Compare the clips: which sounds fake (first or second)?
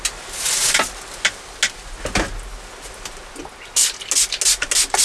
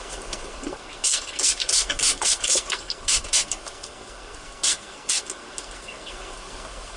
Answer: second